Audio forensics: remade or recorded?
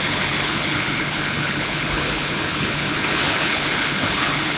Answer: remade